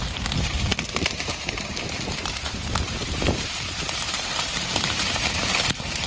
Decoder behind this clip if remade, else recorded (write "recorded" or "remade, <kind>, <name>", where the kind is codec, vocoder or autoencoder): remade, vocoder, BigVGAN v2